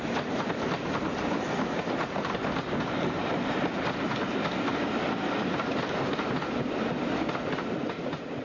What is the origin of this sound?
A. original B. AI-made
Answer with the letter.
A